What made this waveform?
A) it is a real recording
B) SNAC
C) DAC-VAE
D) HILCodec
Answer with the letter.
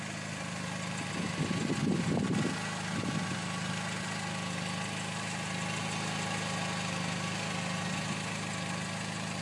A